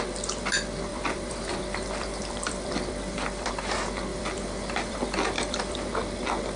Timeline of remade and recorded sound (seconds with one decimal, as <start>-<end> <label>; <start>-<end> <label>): 0.0-0.9 recorded; 0.9-3.5 remade; 3.5-4.1 recorded; 4.1-5.9 remade; 5.9-6.6 recorded